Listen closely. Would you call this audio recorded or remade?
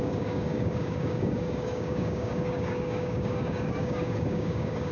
remade